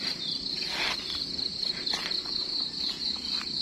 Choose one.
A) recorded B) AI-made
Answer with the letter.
A